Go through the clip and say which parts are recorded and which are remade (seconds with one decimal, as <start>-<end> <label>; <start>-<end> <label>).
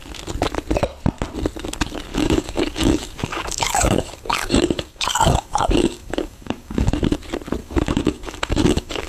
0.0-2.1 recorded; 2.1-6.9 remade; 6.9-7.6 recorded; 7.6-9.1 remade